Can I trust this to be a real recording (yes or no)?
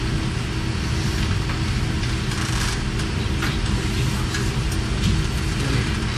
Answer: yes